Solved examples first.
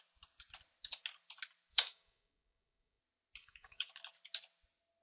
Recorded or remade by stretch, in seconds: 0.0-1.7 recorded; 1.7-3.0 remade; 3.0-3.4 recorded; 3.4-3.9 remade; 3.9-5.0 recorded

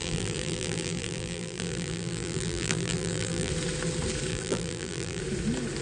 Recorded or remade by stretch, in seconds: 0.0-3.5 remade; 3.5-4.3 recorded; 4.3-5.2 remade; 5.2-5.8 recorded

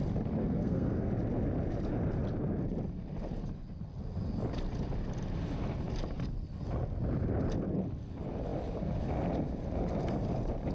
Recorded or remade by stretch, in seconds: 0.0-0.4 recorded; 0.4-1.1 remade; 1.1-10.7 recorded